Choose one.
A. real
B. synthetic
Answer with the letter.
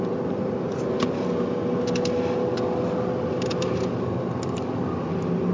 A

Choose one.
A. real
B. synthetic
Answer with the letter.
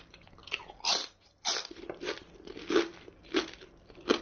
A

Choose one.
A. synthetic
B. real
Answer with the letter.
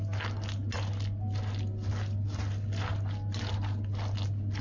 B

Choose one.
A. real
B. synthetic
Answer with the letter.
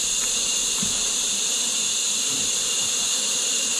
B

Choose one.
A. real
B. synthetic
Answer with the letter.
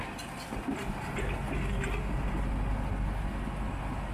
A